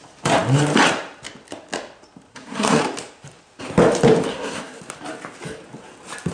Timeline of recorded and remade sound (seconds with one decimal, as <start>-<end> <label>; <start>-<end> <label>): 0.0-2.3 recorded; 2.3-2.8 remade; 2.8-4.3 recorded; 4.3-4.8 remade; 4.8-6.3 recorded